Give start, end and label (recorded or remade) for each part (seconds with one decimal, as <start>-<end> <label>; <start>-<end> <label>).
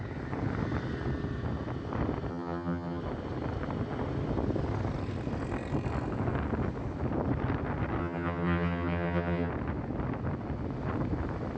0.0-2.3 recorded; 2.3-3.0 remade; 3.0-8.0 recorded; 8.0-9.5 remade; 9.5-11.6 recorded